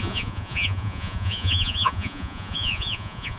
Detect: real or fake fake